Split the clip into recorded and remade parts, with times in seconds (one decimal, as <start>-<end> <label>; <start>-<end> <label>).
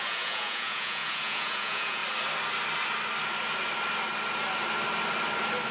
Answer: 0.0-2.0 remade; 2.0-5.7 recorded